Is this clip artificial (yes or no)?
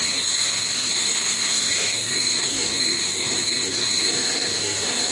yes